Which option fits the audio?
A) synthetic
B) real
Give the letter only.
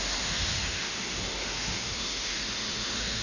A